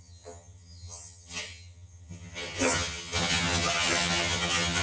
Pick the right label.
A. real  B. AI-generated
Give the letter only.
B